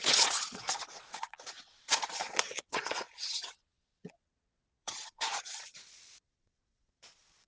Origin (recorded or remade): remade